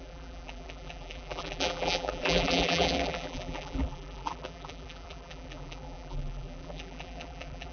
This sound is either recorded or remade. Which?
remade